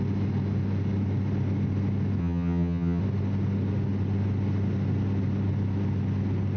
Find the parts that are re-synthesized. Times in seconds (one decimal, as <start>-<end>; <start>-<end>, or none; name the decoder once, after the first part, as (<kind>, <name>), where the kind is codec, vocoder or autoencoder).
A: 2.2-3.0 (vocoder, HiFi-GAN)

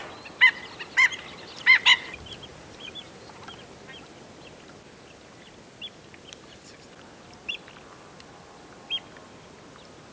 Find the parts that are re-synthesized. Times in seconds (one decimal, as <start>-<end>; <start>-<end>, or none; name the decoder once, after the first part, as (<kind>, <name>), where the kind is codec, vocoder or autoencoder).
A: none

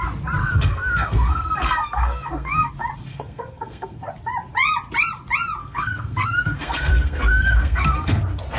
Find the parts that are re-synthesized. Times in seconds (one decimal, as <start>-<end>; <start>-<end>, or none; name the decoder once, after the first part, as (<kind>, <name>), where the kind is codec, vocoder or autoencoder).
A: 0.4-2.7 (codec, SNAC); 3.1-4.1; 5.6-8.2

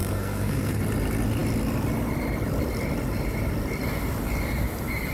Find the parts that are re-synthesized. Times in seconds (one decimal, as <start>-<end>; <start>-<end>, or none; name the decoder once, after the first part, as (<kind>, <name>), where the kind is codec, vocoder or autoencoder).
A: 0.0-0.8 (codec, SNAC)

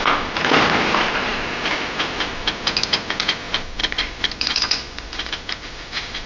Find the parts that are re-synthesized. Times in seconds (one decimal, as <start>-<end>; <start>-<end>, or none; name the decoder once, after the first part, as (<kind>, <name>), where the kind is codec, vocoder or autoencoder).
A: 3.8-5.3 (vocoder, Vocos)

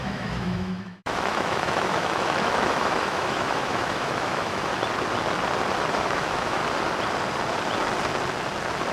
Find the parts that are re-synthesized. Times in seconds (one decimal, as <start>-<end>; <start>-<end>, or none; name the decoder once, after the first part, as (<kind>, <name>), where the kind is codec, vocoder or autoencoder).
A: 0.0-4.7 (autoencoder, DAC-VAE); 5.9-6.6

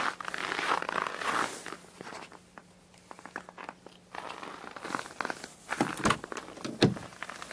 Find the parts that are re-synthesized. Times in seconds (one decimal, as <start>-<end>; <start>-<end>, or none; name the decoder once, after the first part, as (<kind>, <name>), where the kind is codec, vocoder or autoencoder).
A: none